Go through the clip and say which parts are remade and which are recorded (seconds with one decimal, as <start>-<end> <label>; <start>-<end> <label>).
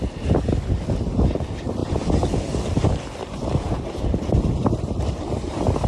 0.0-5.9 remade